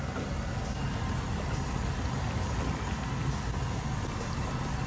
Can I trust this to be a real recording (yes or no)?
yes